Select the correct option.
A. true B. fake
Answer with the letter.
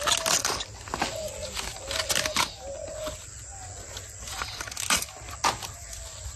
A